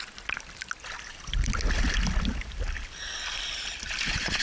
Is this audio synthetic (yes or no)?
no